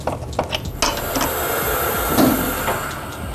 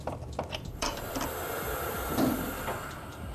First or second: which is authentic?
first